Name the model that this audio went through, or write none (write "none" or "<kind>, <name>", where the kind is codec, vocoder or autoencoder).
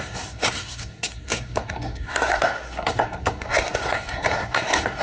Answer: codec, SNAC